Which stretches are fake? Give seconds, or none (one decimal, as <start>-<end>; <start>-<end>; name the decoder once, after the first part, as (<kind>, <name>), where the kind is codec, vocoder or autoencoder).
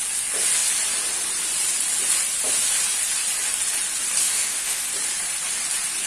4.2-4.8 (autoencoder, DAC-VAE)